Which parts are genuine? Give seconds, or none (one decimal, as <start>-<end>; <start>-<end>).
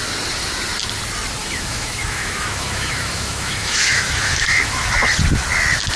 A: 0.0-1.4; 4.8-6.0